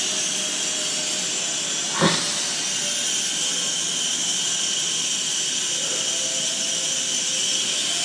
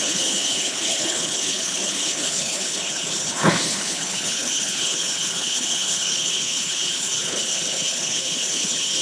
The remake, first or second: second